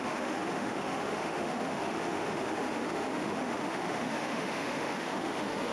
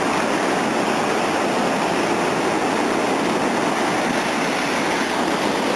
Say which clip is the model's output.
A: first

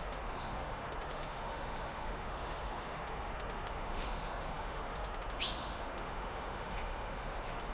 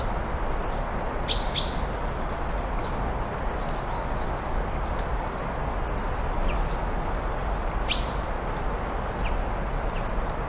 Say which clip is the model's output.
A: first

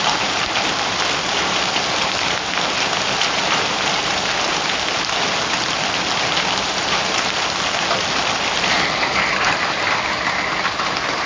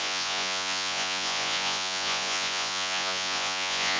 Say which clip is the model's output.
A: second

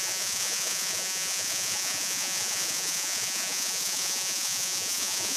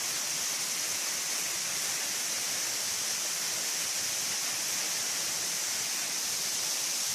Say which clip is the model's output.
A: first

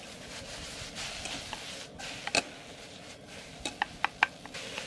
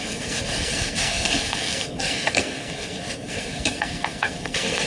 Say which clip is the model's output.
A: second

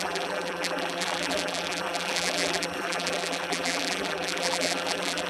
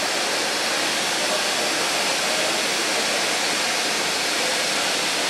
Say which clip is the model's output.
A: first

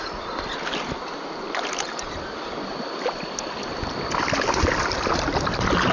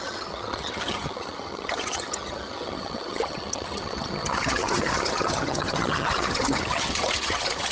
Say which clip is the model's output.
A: second